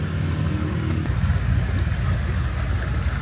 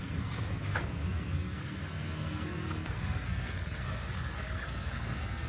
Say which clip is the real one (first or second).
first